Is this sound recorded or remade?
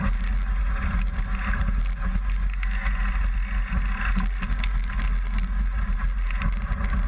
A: recorded